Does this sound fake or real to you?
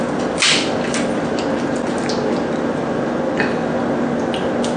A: real